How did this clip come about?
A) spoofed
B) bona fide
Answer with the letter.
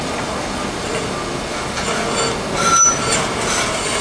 B